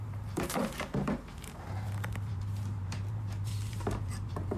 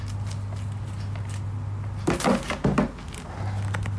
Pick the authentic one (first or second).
second